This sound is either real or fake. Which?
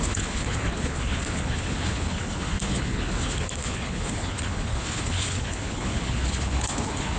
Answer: fake